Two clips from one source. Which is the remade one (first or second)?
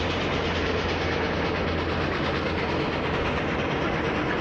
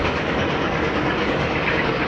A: second